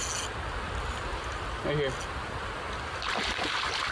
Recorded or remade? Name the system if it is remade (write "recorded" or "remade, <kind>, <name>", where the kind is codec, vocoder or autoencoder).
recorded